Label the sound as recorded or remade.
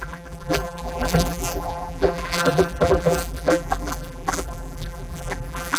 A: remade